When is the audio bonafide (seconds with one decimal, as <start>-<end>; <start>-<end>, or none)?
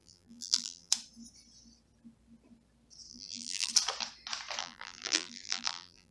0.9-3.1; 3.7-4.6